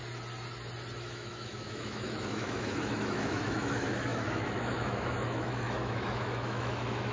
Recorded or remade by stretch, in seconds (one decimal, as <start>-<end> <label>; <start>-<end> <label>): 0.0-1.0 recorded; 1.0-7.1 remade